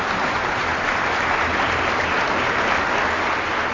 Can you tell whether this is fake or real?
real